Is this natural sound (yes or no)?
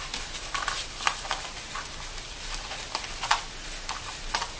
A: yes